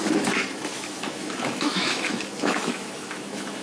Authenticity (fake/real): fake